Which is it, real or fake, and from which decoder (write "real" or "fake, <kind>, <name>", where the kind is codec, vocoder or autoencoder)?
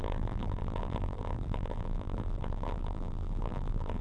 fake, vocoder, BigVGAN v2